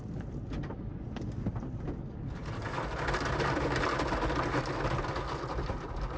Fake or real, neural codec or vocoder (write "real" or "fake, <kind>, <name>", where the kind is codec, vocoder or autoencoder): real